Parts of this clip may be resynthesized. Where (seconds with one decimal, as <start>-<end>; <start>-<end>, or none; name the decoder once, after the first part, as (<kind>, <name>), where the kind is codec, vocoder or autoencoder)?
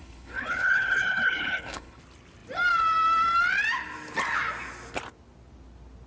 0.0-2.0 (codec, HILCodec)